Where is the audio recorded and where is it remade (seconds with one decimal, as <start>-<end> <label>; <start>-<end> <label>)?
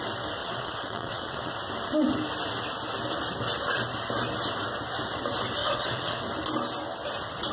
0.0-0.4 recorded; 0.4-1.5 remade; 1.5-5.6 recorded; 5.6-6.2 remade; 6.2-7.5 recorded